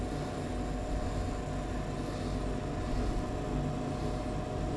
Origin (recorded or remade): recorded